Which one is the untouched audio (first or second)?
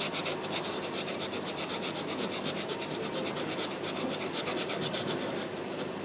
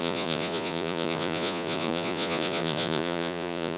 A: first